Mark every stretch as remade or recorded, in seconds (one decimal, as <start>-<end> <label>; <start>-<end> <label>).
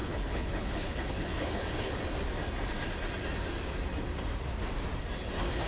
0.0-2.0 remade; 2.0-5.7 recorded